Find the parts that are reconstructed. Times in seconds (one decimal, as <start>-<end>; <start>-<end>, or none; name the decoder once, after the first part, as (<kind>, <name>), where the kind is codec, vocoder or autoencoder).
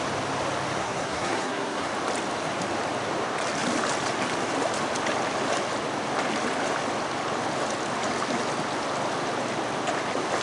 0.8-1.9 (codec, SNAC)